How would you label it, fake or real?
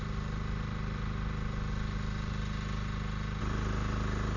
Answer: real